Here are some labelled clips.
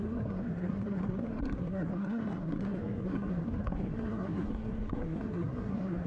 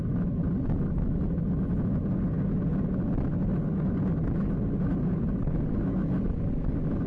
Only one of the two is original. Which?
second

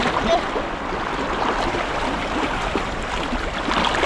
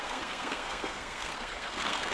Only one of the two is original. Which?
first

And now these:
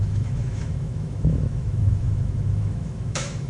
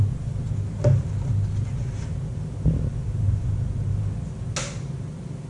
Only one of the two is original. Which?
second